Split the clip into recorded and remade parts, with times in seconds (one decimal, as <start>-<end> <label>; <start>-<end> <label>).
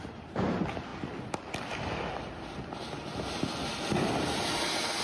0.0-5.0 recorded